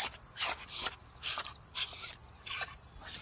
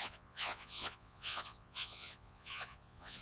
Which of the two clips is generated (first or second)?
second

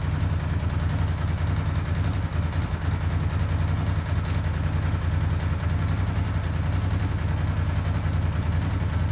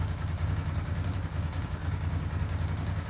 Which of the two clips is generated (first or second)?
second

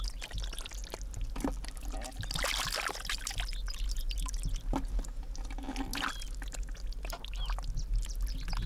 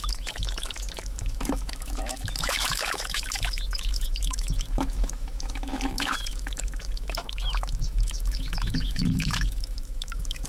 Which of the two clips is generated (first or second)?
second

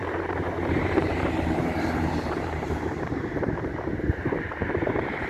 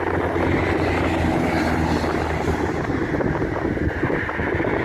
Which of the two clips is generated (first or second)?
first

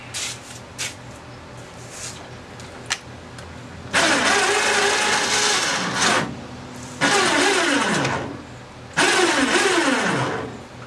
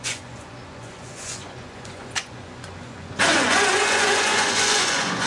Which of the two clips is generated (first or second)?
second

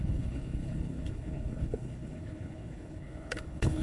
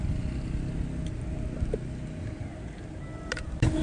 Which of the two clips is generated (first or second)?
first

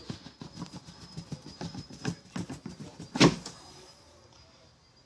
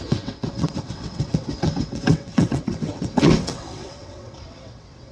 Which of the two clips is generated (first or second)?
second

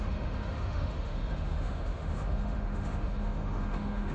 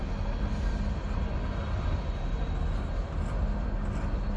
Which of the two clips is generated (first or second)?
first